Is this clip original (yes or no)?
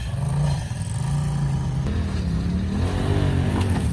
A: yes